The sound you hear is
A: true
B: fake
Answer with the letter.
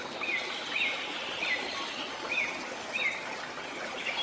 A